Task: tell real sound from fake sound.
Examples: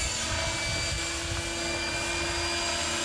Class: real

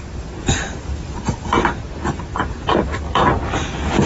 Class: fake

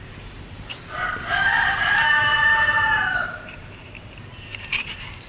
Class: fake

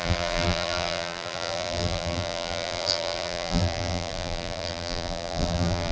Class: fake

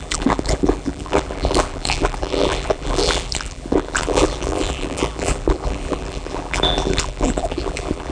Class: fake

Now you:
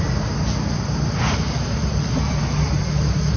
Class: real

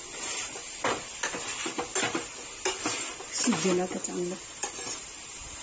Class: fake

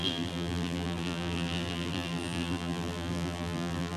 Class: fake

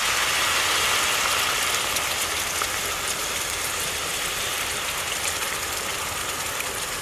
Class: real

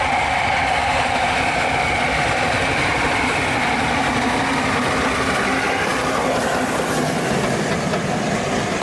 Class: real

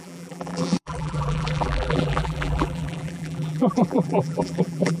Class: fake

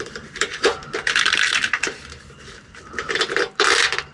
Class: fake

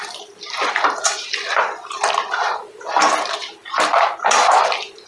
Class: fake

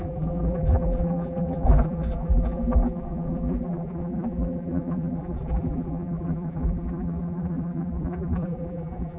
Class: fake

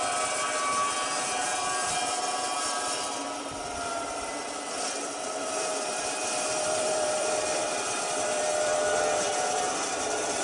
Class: fake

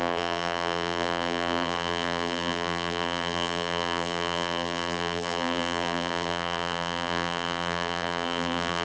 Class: fake